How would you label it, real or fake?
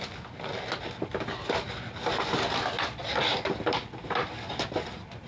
real